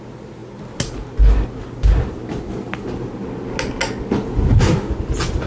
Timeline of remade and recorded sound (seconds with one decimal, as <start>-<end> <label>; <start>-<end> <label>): 0.0-5.5 recorded